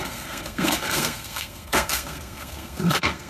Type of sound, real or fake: fake